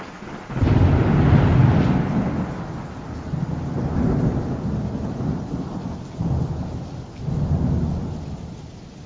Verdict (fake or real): real